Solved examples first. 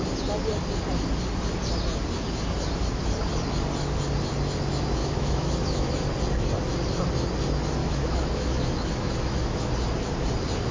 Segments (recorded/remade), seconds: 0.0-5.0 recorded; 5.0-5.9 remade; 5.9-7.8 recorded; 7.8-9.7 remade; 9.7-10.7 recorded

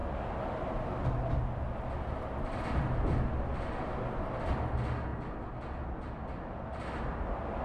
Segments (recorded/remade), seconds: 0.0-7.6 recorded

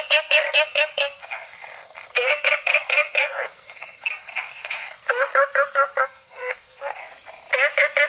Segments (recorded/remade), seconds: 0.0-7.0 remade; 7.0-8.1 recorded